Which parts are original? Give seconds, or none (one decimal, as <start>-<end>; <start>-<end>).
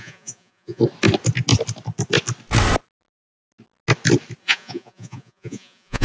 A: 0.8-4.4